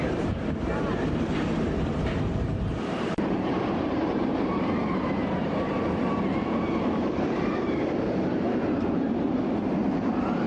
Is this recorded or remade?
remade